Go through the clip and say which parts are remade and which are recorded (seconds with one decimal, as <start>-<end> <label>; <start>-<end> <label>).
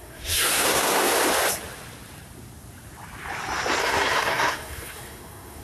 0.0-1.1 remade; 1.1-3.8 recorded; 3.8-5.6 remade